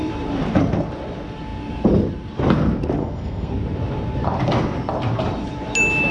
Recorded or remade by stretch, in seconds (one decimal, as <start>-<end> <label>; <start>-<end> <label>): 0.0-3.0 recorded; 3.0-3.5 remade; 3.5-6.1 recorded